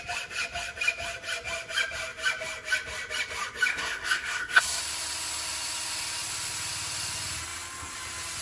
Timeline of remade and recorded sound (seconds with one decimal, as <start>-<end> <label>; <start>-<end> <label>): 0.0-3.7 recorded; 3.7-4.8 remade; 4.8-8.4 recorded